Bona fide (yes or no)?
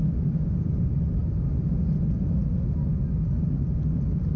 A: yes